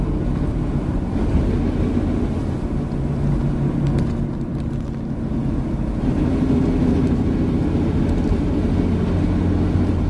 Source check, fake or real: real